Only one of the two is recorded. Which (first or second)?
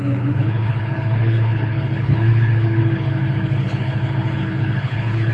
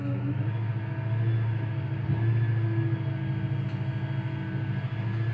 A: second